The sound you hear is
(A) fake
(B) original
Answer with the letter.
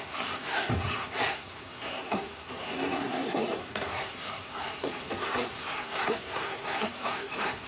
A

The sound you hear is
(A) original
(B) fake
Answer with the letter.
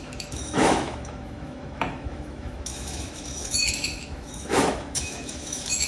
B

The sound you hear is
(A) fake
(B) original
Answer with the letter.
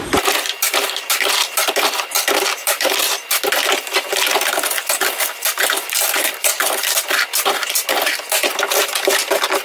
A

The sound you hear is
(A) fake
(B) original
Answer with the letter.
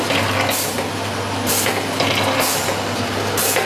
B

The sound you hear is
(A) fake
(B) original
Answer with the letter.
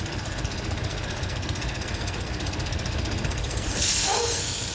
A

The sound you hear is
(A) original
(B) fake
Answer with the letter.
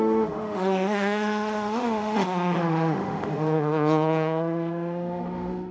B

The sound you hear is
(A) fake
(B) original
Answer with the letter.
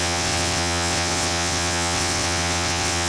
A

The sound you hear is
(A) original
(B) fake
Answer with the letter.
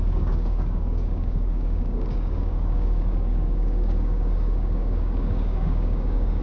B